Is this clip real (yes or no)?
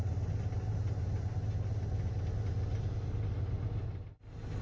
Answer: yes